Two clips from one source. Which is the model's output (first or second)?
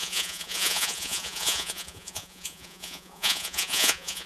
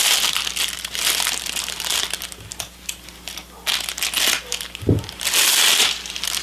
first